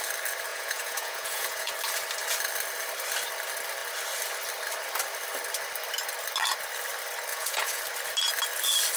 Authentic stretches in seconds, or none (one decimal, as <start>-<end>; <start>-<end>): 0.0-0.5; 1.7-7.3; 7.8-9.0